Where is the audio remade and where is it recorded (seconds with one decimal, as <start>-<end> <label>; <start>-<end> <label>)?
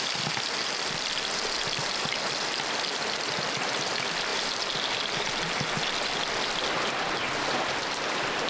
0.0-4.3 remade; 4.3-7.8 recorded; 7.8-8.5 remade